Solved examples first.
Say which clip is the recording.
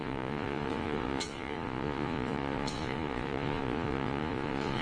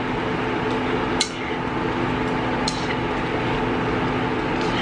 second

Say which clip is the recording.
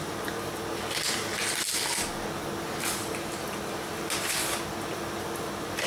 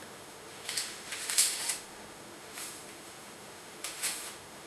first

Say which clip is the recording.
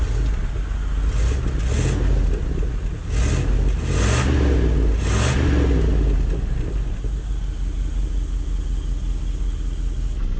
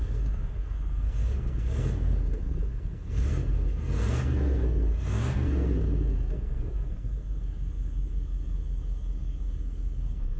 first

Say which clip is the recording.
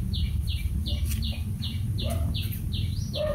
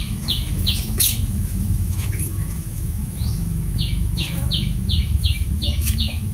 first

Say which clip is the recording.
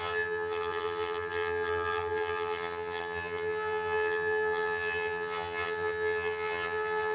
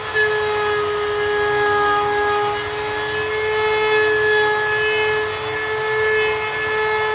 second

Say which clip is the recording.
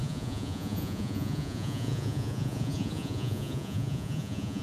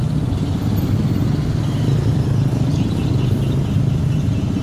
second